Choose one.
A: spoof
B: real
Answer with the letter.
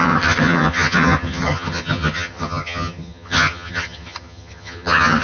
A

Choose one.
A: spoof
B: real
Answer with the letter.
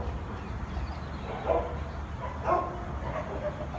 B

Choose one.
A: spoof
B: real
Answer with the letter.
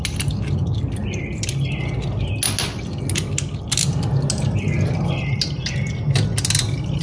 B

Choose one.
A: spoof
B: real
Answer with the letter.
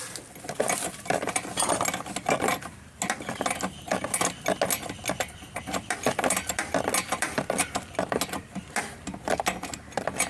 B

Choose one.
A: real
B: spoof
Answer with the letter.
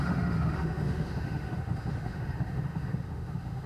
B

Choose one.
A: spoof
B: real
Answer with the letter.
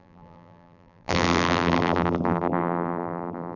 A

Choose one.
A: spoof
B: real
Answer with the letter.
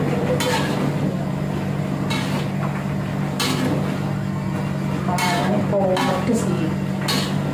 B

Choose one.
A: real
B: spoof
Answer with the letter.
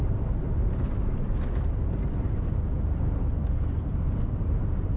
A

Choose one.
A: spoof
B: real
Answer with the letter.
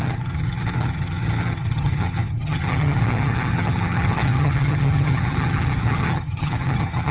A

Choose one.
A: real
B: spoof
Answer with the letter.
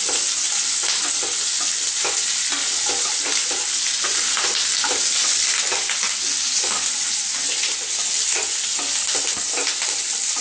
A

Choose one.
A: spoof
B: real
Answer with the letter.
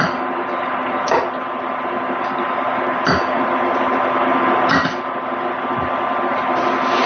B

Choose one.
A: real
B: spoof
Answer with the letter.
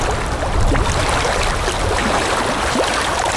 A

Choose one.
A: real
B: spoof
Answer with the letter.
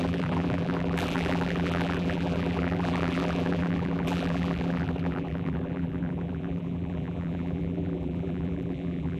B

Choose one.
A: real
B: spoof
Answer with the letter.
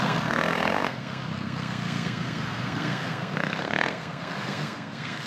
B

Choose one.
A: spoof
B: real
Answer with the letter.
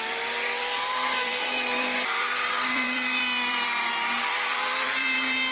A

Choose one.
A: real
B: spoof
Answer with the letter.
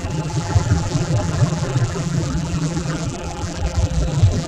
B